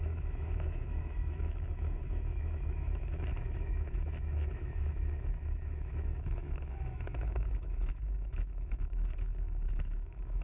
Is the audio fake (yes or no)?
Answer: yes